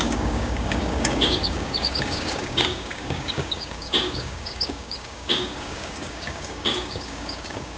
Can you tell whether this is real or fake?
fake